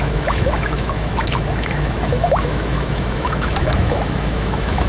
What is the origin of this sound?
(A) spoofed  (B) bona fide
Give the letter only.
A